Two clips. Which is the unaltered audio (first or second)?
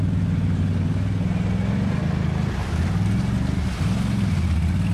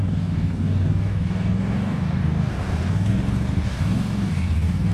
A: first